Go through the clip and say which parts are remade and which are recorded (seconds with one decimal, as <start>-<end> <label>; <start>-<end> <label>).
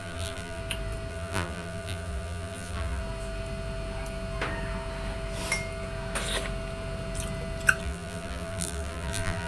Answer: 0.0-0.6 remade; 0.6-1.1 recorded; 1.1-3.0 remade; 3.0-7.8 recorded; 7.8-9.5 remade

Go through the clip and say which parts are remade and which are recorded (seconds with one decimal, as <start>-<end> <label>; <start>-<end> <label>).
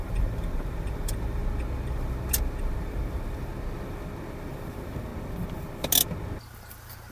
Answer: 0.0-1.4 remade; 1.4-2.6 recorded; 2.6-3.5 remade; 3.5-4.5 recorded; 4.5-5.1 remade; 5.1-6.5 recorded; 6.5-7.1 remade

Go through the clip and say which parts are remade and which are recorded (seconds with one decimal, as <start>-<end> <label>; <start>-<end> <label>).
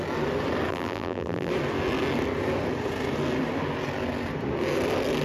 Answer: 0.0-0.7 recorded; 0.7-1.5 remade; 1.5-5.2 recorded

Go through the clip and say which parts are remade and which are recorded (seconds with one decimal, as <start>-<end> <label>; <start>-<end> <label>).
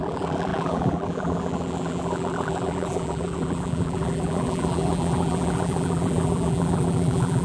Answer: 0.0-7.4 remade